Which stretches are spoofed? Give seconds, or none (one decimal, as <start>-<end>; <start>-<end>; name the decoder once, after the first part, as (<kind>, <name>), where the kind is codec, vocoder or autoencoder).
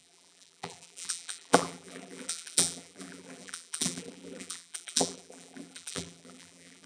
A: 0.0-6.9 (vocoder, BigVGAN v2)